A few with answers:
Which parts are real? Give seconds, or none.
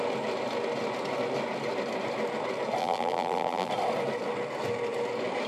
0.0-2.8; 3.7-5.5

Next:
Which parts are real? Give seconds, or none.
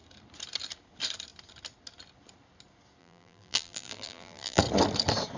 0.0-3.0; 4.6-5.4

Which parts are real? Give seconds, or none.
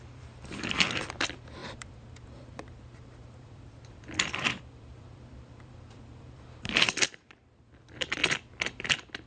8.2-8.9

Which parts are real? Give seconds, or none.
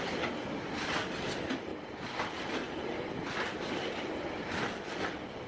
0.0-5.5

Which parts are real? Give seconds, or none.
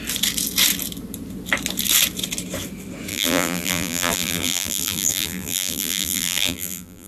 0.0-3.1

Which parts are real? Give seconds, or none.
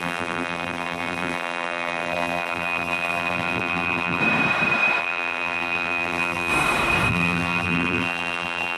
4.2-5.0; 6.5-7.1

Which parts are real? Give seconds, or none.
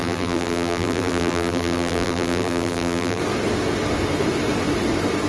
3.2-5.3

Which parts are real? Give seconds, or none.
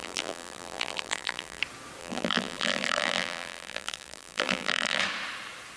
1.6-2.0; 5.0-5.8